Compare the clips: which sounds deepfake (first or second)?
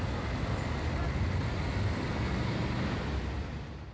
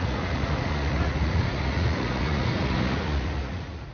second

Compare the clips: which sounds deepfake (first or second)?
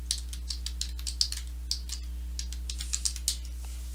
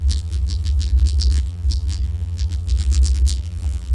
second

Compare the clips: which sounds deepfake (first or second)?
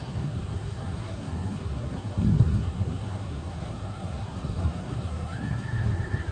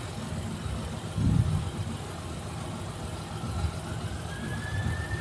first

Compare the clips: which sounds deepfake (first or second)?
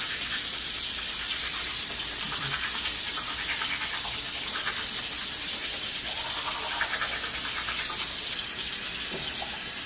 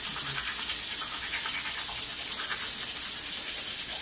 first